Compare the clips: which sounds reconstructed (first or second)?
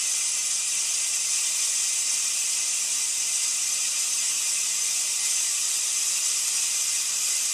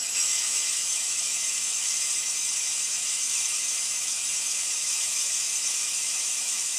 second